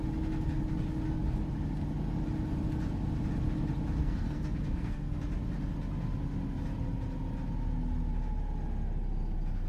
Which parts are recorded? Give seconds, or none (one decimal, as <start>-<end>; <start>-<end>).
0.0-4.0; 5.2-9.7